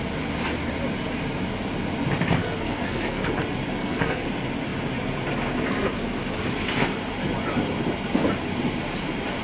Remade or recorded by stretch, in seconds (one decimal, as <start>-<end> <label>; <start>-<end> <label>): 0.0-2.4 recorded; 2.4-3.3 remade; 3.3-3.8 recorded; 3.8-4.3 remade; 4.3-9.4 recorded